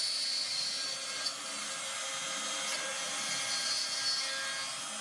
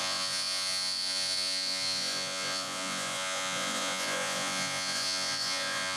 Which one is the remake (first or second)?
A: second